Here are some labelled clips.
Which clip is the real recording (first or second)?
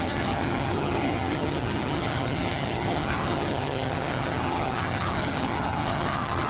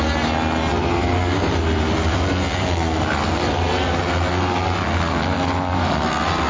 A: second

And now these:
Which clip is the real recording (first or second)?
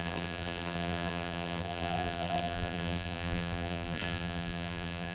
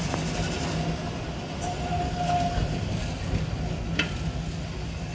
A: second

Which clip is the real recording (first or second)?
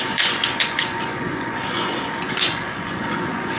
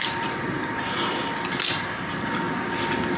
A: second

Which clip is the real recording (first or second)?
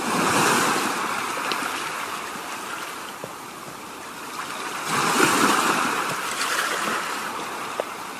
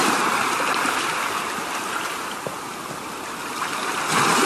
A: second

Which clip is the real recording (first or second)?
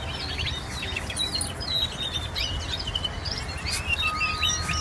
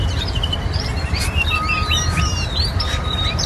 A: first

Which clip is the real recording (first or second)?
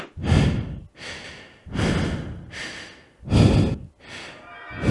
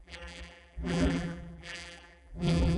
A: first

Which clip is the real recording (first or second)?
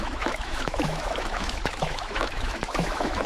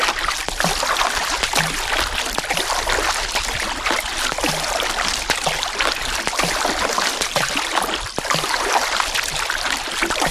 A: second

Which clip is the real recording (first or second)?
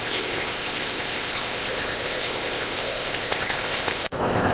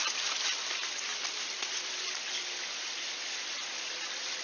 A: second